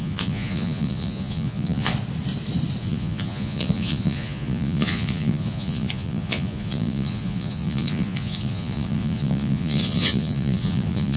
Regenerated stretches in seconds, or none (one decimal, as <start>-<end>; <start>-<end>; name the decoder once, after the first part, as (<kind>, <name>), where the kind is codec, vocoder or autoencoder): 0.0-1.9 (vocoder, Vocos); 2.8-11.2